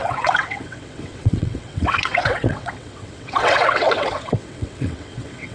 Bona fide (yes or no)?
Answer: no